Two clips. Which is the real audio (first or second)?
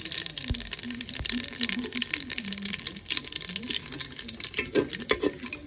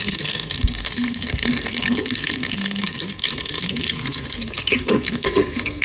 first